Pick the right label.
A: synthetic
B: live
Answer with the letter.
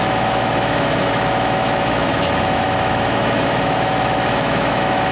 A